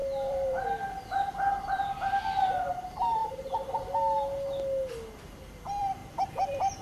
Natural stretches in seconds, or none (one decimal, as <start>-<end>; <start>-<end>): 3.2-5.4